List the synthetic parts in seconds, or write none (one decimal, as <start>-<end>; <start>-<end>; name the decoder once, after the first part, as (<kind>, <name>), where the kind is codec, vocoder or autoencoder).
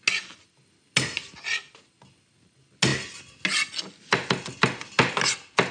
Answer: none